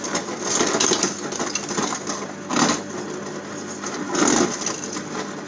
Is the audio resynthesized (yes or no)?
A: no